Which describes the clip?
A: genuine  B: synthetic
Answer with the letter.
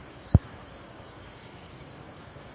B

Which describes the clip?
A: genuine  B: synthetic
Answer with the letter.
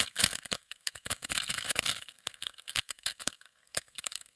B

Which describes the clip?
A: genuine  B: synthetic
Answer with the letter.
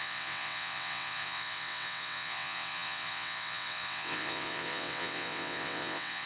B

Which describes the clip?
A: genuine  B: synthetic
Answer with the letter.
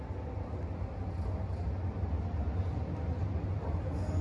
A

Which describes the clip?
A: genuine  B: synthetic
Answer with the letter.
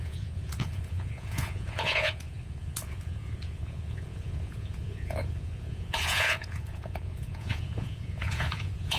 B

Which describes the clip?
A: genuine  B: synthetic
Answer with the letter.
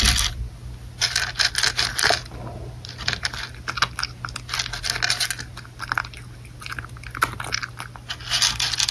A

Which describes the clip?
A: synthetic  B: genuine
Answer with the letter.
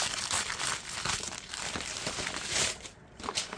A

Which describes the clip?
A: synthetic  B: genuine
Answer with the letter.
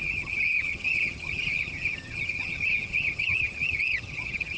A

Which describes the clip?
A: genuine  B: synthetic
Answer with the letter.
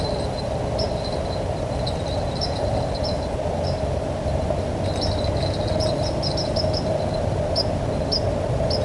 A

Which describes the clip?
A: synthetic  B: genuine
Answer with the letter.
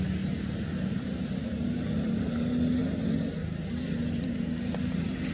B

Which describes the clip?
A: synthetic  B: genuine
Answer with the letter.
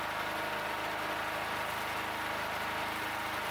B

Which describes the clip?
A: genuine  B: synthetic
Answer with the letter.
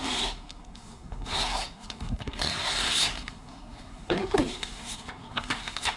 B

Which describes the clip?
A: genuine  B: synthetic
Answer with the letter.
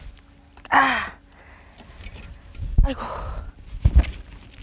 A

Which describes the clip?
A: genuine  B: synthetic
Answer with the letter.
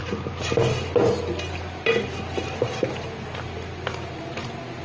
A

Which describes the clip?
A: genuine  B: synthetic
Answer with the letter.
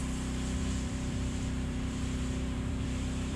B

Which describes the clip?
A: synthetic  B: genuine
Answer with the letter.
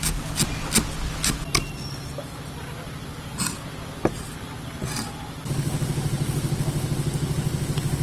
B